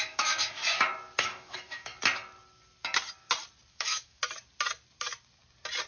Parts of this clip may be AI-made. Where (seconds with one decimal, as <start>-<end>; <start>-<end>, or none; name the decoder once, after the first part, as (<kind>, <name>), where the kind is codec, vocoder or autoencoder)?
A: 0.0-0.6 (autoencoder, DAC-VAE); 1.2-1.9; 3.7-4.2